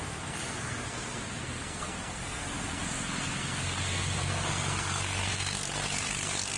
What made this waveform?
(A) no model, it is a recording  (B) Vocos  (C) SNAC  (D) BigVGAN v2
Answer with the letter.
C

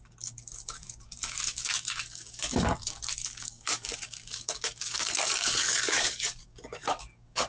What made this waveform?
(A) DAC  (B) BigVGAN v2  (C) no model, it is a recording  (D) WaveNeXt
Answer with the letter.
A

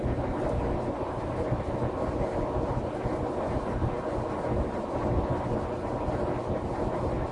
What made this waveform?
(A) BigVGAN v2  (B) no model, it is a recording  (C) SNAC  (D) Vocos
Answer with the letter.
B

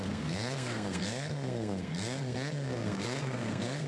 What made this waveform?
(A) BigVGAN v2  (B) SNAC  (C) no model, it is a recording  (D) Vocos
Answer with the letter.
B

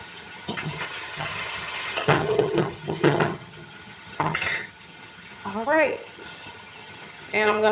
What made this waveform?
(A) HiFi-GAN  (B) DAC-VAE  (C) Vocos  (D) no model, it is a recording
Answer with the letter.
A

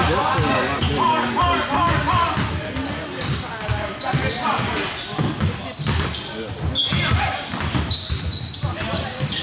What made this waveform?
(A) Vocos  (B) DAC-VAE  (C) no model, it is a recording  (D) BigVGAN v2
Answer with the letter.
C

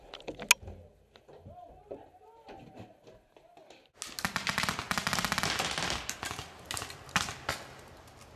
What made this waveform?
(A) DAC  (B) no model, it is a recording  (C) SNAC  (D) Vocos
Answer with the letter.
B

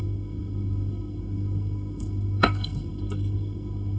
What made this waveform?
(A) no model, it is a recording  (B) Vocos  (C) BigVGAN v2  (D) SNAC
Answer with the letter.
D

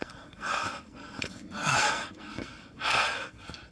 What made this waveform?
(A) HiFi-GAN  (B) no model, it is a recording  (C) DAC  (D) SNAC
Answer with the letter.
D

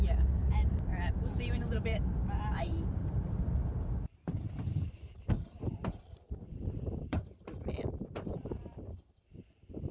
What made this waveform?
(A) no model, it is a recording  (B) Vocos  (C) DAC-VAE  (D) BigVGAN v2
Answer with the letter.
D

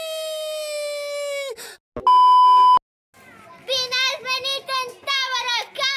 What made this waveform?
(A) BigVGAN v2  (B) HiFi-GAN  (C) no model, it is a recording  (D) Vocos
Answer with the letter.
C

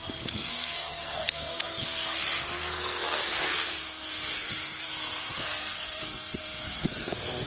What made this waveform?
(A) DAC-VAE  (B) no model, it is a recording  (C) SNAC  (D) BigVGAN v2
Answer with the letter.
C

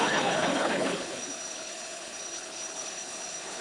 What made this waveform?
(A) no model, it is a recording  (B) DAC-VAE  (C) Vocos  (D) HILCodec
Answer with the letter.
D